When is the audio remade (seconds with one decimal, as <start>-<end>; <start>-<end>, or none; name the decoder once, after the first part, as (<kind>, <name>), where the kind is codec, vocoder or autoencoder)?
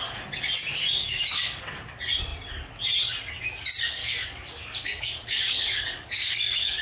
1.0-1.6 (codec, DAC); 4.0-6.8